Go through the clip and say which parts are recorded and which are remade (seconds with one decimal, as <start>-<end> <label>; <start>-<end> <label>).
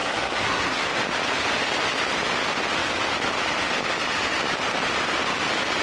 0.0-0.8 remade; 0.8-5.8 recorded